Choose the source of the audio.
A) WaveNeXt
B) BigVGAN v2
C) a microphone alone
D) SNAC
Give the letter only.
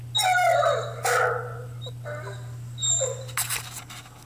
C